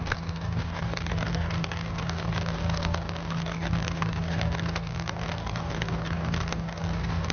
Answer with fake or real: fake